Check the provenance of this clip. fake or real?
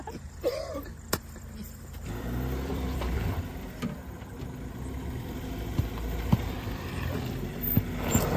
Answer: fake